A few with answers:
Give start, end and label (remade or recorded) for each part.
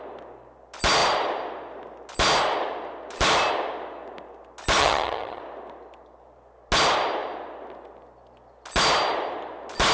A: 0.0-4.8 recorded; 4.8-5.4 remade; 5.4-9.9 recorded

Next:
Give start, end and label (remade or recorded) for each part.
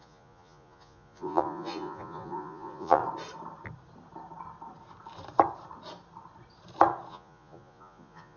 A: 0.0-3.0 remade; 3.0-7.1 recorded; 7.1-8.4 remade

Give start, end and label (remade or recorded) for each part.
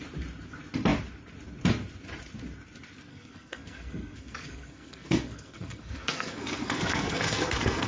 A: 0.0-3.1 recorded; 3.1-7.9 remade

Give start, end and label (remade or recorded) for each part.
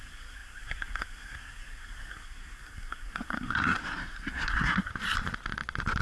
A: 0.0-4.9 remade; 4.9-6.0 recorded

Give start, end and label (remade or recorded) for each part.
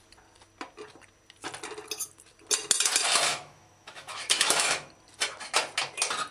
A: 0.0-3.3 recorded; 3.3-4.9 remade; 4.9-6.3 recorded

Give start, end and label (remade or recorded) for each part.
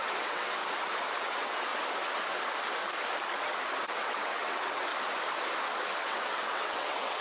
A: 0.0-0.6 remade; 0.6-1.2 recorded; 1.2-1.7 remade; 1.7-3.9 recorded; 3.9-4.9 remade; 4.9-6.0 recorded; 6.0-7.2 remade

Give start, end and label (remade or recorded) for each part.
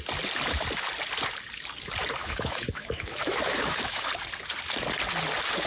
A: 0.0-2.2 recorded; 2.2-4.1 remade; 4.1-5.7 recorded